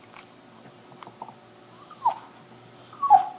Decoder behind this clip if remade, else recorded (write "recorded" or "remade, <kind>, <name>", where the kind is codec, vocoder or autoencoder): recorded